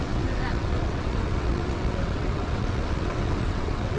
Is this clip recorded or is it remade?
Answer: remade